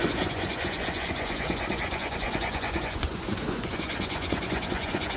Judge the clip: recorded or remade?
remade